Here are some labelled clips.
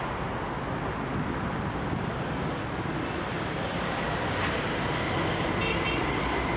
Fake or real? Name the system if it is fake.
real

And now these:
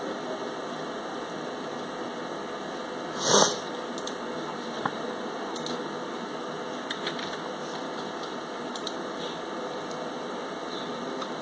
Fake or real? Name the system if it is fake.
real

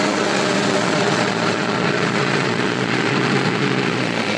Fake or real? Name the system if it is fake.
fake, vocoder, Vocos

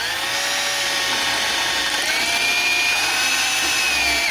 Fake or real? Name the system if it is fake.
real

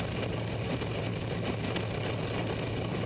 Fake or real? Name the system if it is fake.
real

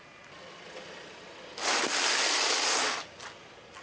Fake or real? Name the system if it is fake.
real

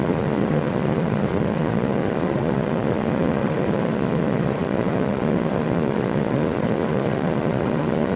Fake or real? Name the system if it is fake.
fake, vocoder, Vocos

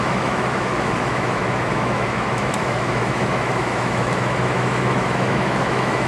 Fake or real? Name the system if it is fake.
fake, autoencoder, DAC-VAE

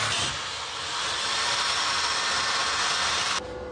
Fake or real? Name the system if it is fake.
real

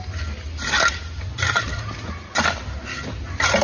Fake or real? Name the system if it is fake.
real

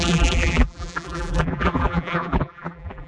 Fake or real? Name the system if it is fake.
fake, vocoder, BigVGAN v2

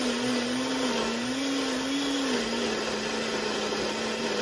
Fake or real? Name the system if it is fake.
real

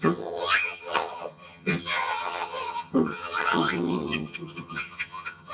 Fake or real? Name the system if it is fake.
fake, vocoder, HiFi-GAN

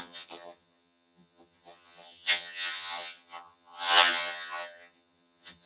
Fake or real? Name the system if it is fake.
fake, vocoder, HiFi-GAN